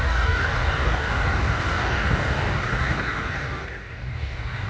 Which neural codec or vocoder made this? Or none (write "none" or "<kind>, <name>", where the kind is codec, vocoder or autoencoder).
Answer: codec, DAC